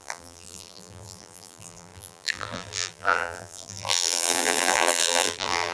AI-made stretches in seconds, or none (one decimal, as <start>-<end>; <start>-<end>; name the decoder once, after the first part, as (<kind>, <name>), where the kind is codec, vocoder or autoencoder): 0.0-5.7 (vocoder, BigVGAN v2)